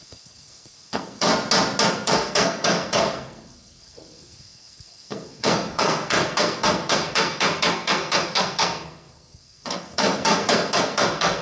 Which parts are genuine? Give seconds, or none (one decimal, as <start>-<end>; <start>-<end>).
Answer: 1.3-1.9